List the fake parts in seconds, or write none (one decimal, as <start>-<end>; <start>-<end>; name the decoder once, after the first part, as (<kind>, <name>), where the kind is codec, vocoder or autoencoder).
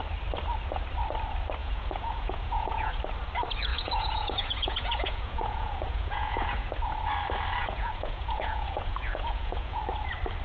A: 1.6-3.0 (vocoder, Vocos); 3.7-6.7; 7.6-9.8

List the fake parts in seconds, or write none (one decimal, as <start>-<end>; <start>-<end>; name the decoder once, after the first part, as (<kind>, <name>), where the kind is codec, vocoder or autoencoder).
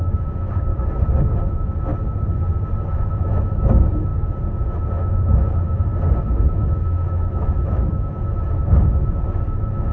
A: 0.0-0.7 (autoencoder, DAC-VAE); 1.5-1.9; 2.9-4.1; 4.9-5.9; 6.5-9.9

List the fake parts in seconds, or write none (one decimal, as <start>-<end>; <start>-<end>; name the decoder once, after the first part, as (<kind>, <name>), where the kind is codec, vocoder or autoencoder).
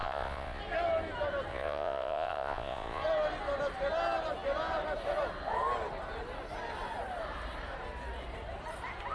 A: 0.0-0.6 (vocoder, Vocos); 1.5-3.0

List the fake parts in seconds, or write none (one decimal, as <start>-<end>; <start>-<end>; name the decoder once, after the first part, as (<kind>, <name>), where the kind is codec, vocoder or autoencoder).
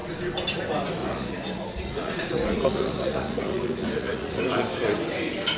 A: 1.0-4.4 (vocoder, Vocos)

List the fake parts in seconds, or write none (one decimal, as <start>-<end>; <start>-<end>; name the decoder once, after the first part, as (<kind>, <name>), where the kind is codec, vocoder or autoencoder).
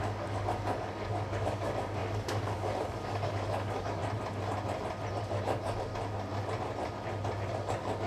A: 0.0-4.0 (codec, DAC); 5.2-5.9; 7.5-8.1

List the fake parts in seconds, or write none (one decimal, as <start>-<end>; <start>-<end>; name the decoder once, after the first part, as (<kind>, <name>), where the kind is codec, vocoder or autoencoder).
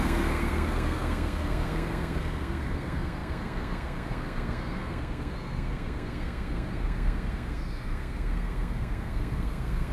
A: 0.0-9.9 (codec, SNAC)